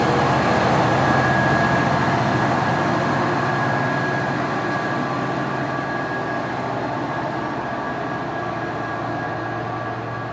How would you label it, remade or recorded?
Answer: recorded